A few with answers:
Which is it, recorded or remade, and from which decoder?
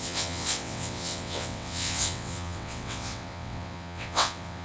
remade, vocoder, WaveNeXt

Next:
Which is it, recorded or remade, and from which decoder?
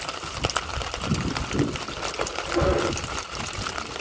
recorded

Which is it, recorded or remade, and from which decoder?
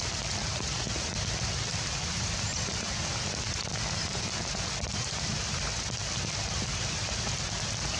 recorded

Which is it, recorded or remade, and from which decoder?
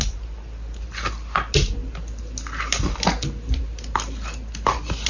recorded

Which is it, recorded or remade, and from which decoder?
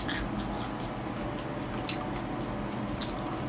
recorded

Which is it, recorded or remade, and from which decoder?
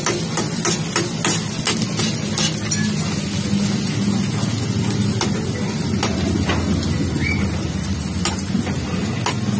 recorded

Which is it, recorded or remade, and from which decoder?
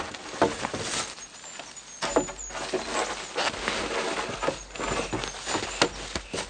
recorded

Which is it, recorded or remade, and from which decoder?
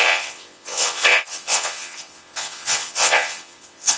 remade, vocoder, WaveNeXt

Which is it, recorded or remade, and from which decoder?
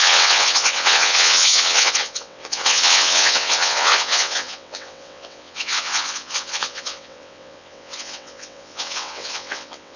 remade, vocoder, WaveNeXt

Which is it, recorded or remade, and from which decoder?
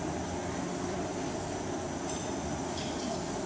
recorded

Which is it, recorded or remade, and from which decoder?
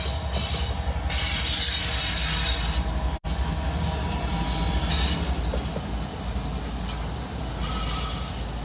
recorded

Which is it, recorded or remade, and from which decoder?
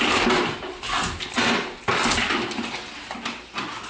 recorded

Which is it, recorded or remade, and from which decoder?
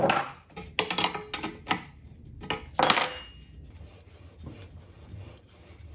recorded